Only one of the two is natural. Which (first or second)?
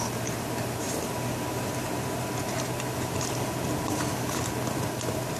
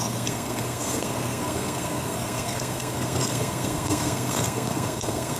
first